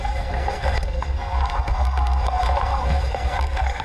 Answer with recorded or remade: remade